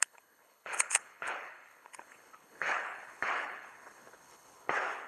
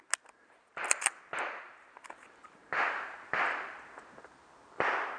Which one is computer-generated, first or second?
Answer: first